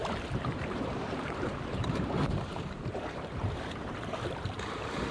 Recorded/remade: remade